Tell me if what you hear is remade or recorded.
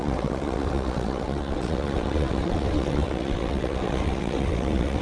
remade